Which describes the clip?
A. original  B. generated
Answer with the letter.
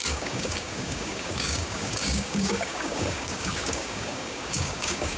B